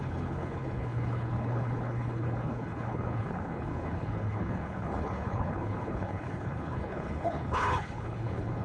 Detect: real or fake fake